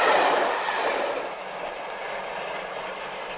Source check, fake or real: real